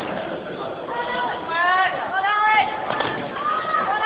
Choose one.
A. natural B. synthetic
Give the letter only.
A